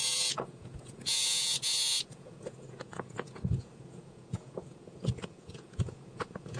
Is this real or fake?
fake